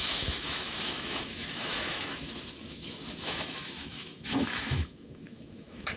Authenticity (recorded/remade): remade